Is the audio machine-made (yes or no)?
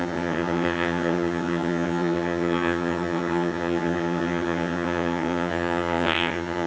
yes